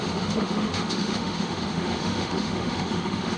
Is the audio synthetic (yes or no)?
yes